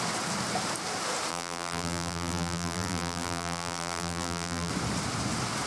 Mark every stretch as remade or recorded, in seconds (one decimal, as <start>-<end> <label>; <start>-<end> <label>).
0.0-1.3 recorded; 1.3-4.7 remade; 4.7-5.7 recorded